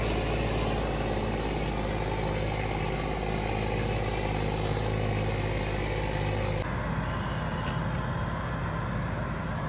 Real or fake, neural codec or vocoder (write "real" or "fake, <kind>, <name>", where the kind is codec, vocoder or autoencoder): real